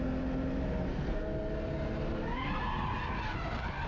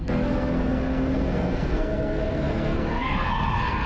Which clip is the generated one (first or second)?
second